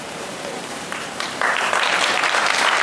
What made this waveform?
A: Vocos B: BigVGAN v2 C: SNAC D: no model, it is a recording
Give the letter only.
B